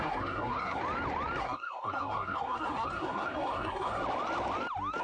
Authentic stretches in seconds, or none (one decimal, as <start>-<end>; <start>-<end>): 0.8-1.4; 4.0-5.0